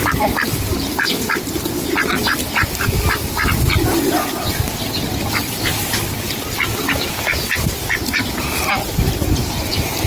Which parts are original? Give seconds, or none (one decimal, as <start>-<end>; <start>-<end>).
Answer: 0.0-10.1